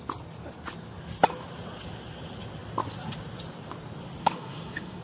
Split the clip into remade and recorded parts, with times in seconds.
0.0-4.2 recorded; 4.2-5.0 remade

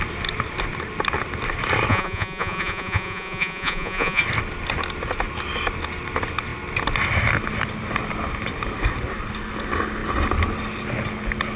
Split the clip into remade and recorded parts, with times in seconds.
0.0-1.9 recorded; 1.9-4.2 remade; 4.2-11.6 recorded

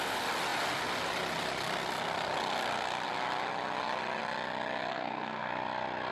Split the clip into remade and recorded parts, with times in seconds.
0.0-4.9 recorded; 4.9-5.5 remade; 5.5-6.1 recorded